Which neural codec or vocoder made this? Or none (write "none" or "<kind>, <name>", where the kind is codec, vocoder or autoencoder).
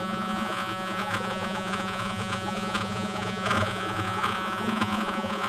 vocoder, Vocos